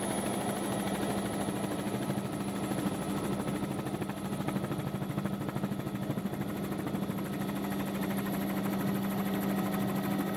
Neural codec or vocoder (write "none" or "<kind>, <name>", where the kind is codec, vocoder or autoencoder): none